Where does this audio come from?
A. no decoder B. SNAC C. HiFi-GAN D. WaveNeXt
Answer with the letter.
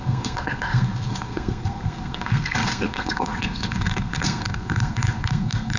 B